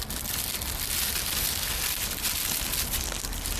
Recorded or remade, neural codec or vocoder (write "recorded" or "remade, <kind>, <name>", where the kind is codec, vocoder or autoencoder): recorded